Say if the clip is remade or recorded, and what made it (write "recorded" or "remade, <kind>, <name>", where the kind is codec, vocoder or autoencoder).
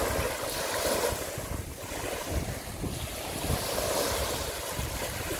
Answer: recorded